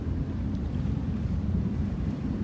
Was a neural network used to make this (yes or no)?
yes